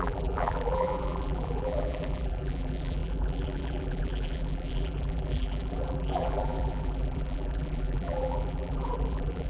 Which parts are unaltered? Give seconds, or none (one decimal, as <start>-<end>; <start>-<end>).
none